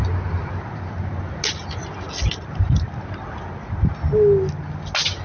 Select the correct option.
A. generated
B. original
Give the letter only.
B